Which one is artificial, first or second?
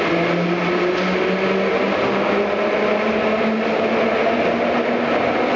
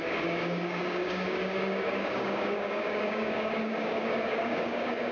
second